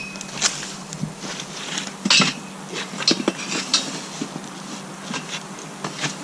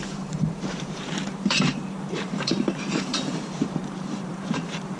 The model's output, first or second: second